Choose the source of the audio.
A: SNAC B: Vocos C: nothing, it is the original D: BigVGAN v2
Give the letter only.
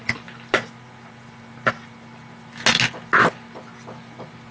C